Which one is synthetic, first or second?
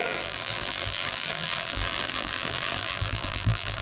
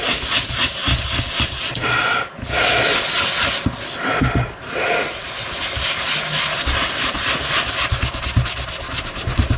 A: first